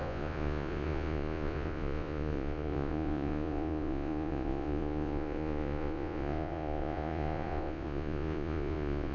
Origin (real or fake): fake